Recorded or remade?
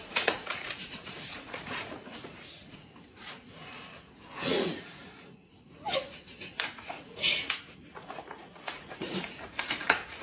remade